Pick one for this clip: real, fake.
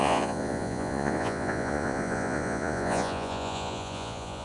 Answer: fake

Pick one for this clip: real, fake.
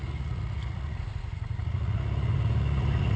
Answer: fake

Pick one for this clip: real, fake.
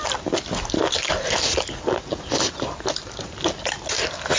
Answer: real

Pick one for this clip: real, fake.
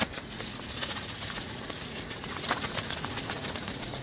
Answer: fake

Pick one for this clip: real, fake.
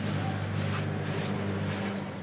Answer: real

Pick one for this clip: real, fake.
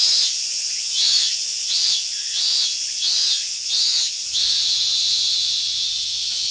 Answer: fake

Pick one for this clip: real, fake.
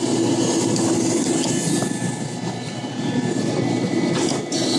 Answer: real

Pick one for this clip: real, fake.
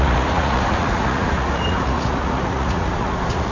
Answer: fake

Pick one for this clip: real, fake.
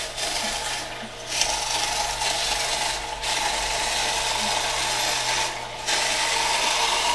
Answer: real